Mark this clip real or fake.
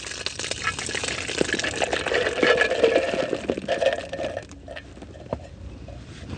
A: real